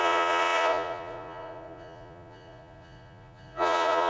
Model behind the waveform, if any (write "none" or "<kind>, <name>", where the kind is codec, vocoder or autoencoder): vocoder, Vocos